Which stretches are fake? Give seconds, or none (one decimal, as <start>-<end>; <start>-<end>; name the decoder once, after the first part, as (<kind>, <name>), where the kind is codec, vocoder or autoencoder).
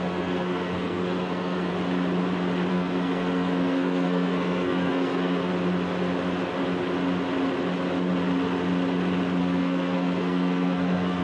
0.0-1.7 (codec, SNAC); 2.7-5.5; 9.4-11.2